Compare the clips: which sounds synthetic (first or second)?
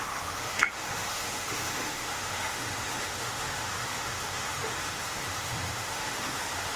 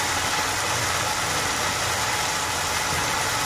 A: first